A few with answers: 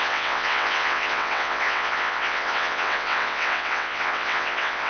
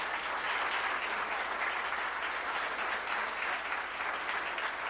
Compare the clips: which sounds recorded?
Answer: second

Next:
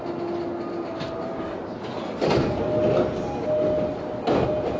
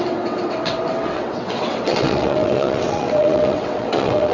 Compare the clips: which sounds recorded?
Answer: first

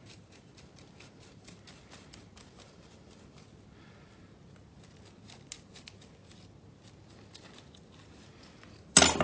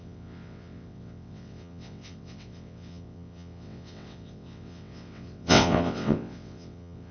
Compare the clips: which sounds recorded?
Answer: first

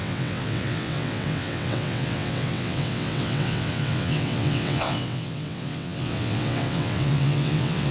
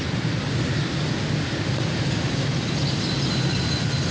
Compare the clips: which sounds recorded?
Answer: second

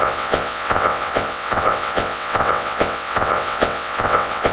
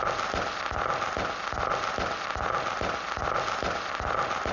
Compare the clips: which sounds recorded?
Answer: second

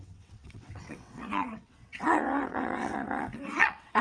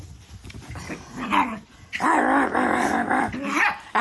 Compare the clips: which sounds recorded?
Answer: second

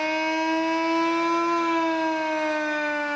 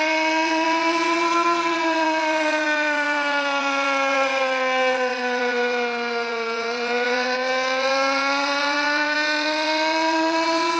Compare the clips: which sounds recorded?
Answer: first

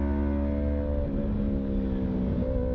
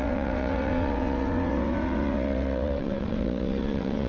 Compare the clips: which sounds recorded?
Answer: first